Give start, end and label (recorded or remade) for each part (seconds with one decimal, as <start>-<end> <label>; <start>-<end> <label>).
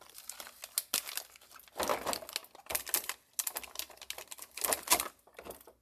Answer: 0.0-5.8 recorded